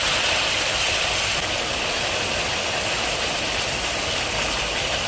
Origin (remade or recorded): recorded